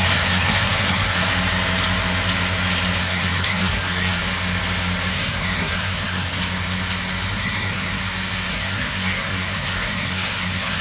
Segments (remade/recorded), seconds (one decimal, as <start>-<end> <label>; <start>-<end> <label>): 0.0-1.3 remade; 1.3-3.0 recorded; 3.0-4.2 remade; 4.2-5.1 recorded; 5.1-6.4 remade; 6.4-7.3 recorded; 7.3-8.0 remade; 8.0-8.5 recorded; 8.5-10.8 remade